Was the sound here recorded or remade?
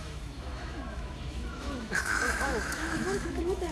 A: remade